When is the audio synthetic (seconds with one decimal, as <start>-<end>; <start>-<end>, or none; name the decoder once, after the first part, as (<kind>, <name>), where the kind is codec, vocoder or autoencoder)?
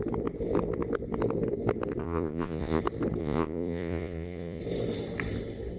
2.0-2.8 (vocoder, Vocos); 3.2-4.6